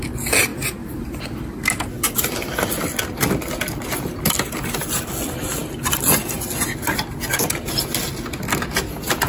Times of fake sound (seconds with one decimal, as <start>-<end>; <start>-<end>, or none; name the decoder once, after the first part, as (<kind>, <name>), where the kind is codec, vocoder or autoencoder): none

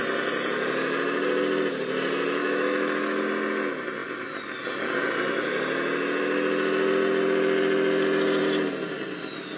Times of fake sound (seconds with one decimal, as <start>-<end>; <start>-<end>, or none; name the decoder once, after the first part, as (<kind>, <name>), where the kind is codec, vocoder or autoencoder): 2.4-3.2 (autoencoder, DAC-VAE)

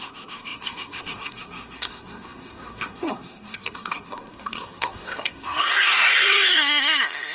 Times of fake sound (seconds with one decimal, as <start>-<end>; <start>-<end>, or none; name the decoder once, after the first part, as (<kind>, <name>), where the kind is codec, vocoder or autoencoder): 0.0-7.3 (codec, SNAC)